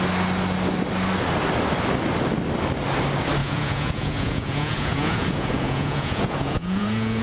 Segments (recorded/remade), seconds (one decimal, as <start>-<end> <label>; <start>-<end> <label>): 0.0-3.4 recorded; 3.4-7.2 remade

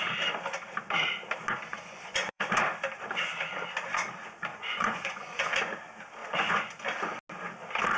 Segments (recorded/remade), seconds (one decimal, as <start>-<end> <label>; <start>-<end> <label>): 0.0-1.7 recorded; 1.7-2.5 remade; 2.5-4.5 recorded; 4.5-5.5 remade; 5.5-6.2 recorded; 6.2-6.7 remade; 6.7-8.0 recorded

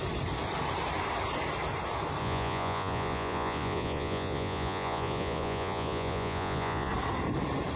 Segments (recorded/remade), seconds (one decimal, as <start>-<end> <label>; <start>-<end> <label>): 0.0-2.2 recorded; 2.2-6.9 remade; 6.9-7.8 recorded

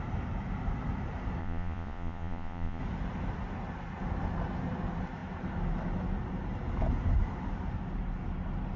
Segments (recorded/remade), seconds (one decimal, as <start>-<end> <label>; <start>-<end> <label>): 0.0-1.4 recorded; 1.4-2.8 remade; 2.8-8.8 recorded